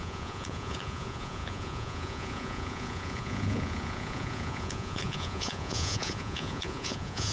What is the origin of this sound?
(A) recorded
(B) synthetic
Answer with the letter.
B